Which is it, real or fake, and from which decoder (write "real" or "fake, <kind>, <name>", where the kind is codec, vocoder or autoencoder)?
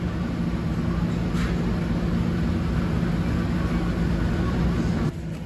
real